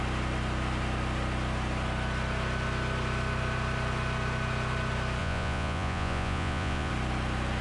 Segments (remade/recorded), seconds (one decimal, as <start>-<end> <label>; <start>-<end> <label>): 0.0-5.2 recorded; 5.2-6.9 remade; 6.9-7.6 recorded